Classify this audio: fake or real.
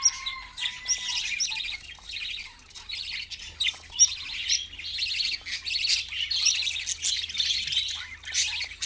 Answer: real